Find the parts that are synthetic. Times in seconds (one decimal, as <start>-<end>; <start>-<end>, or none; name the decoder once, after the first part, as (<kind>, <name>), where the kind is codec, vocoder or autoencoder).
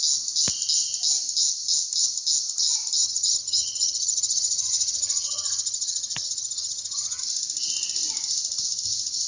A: 3.0-7.2 (vocoder, HiFi-GAN)